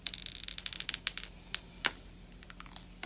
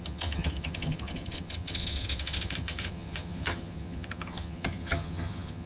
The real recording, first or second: first